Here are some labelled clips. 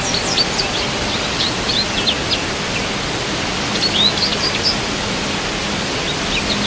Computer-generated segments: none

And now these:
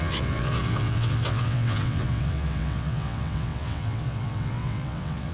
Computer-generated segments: 0.0-5.3 (vocoder, WaveNeXt)

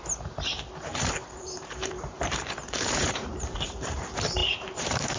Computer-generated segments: 0.9-4.0 (vocoder, BigVGAN v2); 4.4-5.2